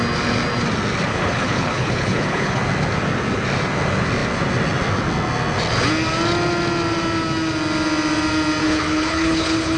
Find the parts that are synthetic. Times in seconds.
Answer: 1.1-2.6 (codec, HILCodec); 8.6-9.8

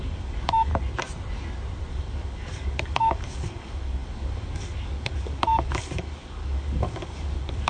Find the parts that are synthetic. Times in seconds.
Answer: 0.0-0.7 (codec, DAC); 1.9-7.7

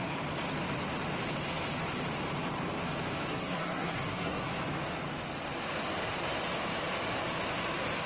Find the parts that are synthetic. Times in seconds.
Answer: 3.3-4.5 (codec, SNAC)

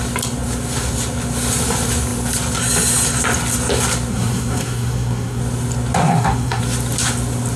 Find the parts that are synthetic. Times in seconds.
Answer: 4.1-5.4 (codec, SNAC); 6.0-6.6

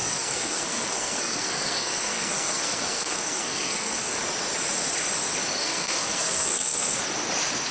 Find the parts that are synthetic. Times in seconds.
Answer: 0.0-4.2 (codec, SNAC); 5.6-7.0